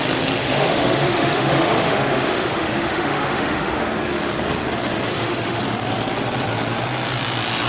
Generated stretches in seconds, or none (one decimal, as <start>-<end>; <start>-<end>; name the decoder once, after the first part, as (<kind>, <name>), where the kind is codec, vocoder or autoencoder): 0.4-3.8 (autoencoder, DAC-VAE); 5.1-5.6